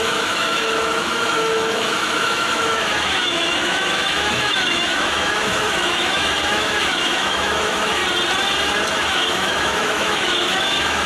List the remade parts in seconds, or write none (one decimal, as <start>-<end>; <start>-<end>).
0.0-8.0; 8.9-11.1